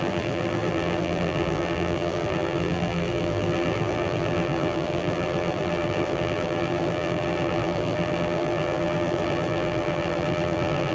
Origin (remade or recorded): remade